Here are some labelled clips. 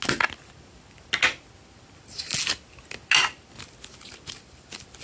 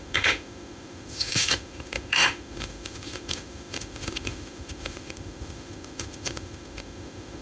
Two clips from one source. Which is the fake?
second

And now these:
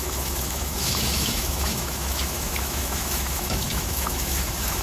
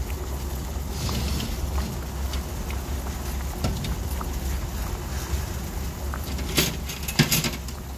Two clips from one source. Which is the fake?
first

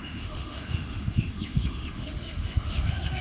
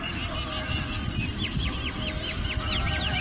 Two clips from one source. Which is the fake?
first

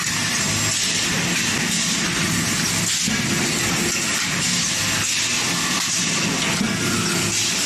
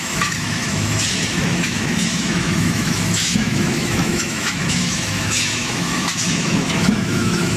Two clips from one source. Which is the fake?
second